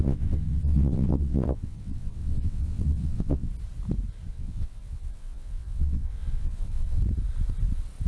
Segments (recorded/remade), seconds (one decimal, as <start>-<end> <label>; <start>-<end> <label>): 0.0-3.5 remade; 3.5-4.3 recorded; 4.3-7.0 remade; 7.0-8.1 recorded

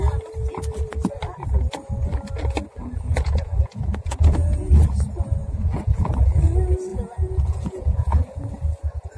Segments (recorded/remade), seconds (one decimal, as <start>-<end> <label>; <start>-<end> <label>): 0.0-2.8 recorded; 2.8-4.7 remade; 4.7-5.4 recorded; 5.4-6.1 remade; 6.1-6.9 recorded; 6.9-8.5 remade; 8.5-9.2 recorded

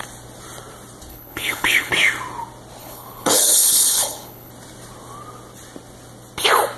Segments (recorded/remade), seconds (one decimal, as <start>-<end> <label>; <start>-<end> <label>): 0.0-1.1 recorded; 1.1-1.9 remade; 1.9-2.8 recorded; 2.8-4.5 remade; 4.5-6.8 recorded

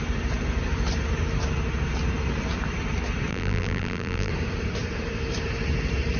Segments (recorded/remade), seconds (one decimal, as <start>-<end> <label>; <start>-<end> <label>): 0.0-3.3 recorded; 3.3-4.3 remade; 4.3-6.2 recorded